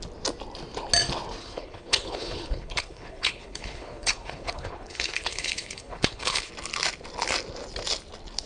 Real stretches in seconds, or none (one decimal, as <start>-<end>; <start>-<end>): 0.0-1.4; 6.5-8.5